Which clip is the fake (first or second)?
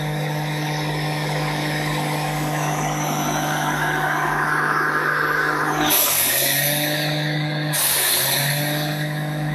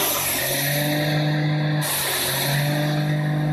first